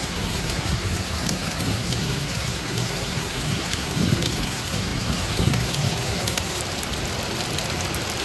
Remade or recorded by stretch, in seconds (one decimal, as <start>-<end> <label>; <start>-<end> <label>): 0.0-6.6 remade; 6.6-8.2 recorded